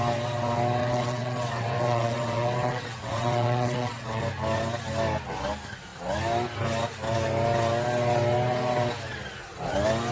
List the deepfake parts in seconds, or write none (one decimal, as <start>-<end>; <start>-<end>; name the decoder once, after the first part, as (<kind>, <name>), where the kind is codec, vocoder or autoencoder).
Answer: 0.8-4.2 (vocoder, WaveNeXt)